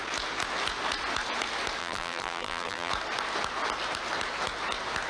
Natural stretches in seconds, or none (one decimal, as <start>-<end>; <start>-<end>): 0.0-1.8; 2.9-5.1